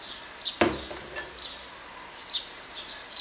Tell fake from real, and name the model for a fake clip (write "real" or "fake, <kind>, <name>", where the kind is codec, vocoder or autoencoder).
real